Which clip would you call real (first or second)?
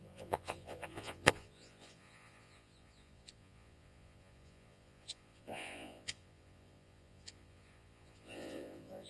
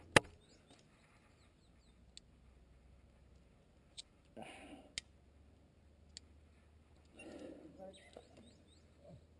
second